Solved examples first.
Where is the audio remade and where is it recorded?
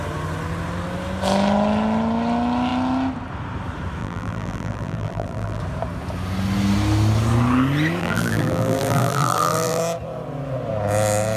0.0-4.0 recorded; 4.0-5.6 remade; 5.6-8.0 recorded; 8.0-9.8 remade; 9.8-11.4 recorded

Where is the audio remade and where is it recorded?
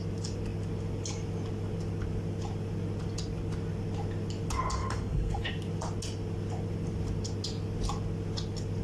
0.0-4.8 recorded; 4.8-5.5 remade; 5.5-8.8 recorded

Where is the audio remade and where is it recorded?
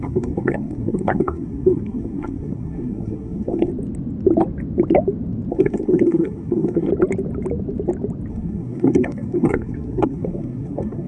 0.0-3.7 remade; 3.7-5.5 recorded; 5.5-6.9 remade; 6.9-8.3 recorded; 8.3-11.1 remade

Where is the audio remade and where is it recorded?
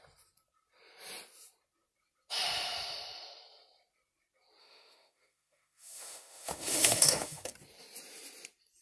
0.0-4.6 recorded; 4.6-7.5 remade; 7.5-8.8 recorded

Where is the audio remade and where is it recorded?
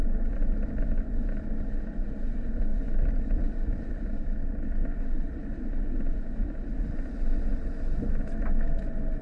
0.0-0.8 remade; 0.8-2.7 recorded; 2.7-4.2 remade; 4.2-5.4 recorded; 5.4-7.5 remade; 7.5-9.2 recorded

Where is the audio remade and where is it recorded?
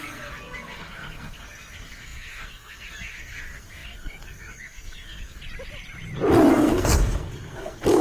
0.0-5.4 remade; 5.4-6.5 recorded; 6.5-8.0 remade